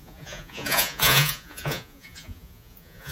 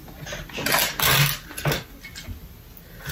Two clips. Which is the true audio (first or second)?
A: second